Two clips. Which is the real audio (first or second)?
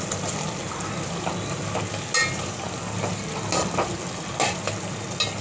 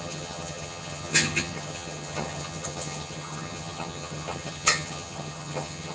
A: first